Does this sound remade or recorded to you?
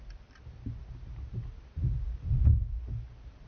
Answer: recorded